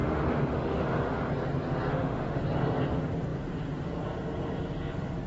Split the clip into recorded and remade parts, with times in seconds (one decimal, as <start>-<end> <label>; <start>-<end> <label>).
0.0-1.3 remade; 1.3-1.9 recorded; 1.9-2.4 remade; 2.4-5.3 recorded